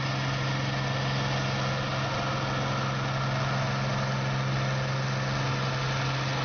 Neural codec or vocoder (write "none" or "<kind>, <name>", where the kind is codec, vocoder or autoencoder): none